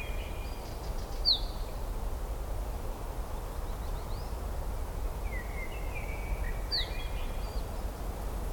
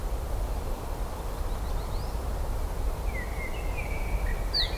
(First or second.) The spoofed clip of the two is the second